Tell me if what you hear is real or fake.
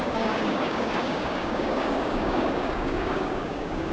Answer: fake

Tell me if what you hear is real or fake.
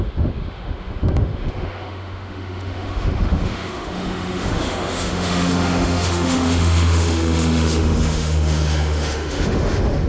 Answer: fake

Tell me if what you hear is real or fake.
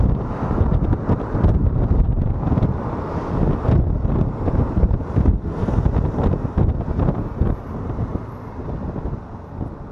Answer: real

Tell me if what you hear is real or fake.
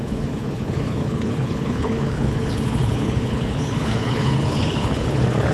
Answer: fake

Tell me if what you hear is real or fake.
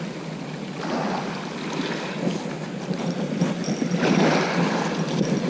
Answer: real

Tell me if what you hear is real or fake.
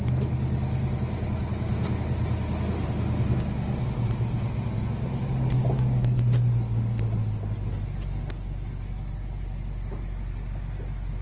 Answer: real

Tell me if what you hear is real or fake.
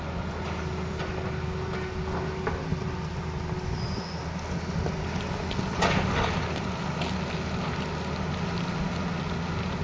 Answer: real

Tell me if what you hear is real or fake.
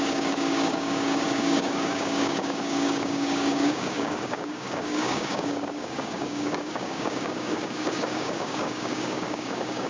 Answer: fake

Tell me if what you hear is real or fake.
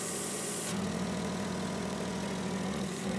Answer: fake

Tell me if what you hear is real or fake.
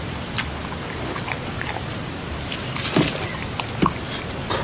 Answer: real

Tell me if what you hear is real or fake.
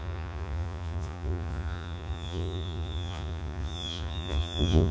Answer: fake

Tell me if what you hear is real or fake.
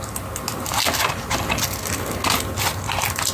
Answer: real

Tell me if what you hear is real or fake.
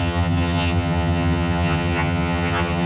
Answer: fake